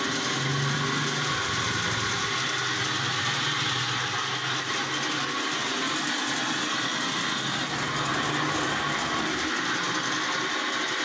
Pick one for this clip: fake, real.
real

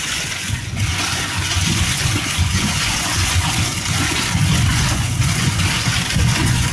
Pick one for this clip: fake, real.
fake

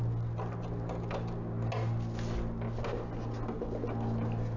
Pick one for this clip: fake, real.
real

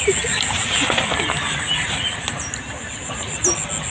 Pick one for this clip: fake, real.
real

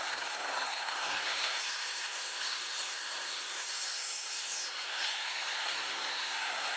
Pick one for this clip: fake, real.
fake